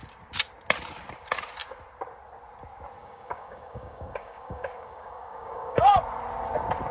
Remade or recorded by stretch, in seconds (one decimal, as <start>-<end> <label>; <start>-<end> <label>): 0.0-3.0 recorded; 3.0-6.0 remade; 6.0-6.9 recorded